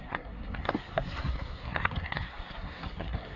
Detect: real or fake fake